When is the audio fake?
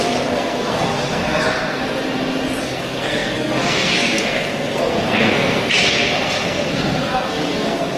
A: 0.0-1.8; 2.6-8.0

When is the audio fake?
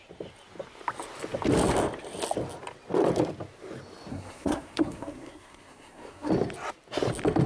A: 4.1-6.3